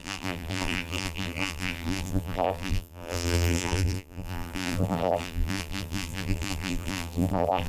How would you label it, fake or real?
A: fake